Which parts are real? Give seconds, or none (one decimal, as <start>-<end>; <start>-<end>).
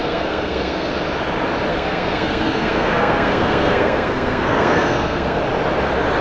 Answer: 0.9-1.7; 5.4-6.2